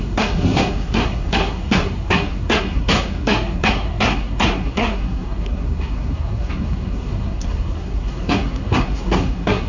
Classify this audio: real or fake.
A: fake